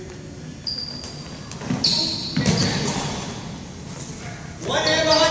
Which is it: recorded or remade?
recorded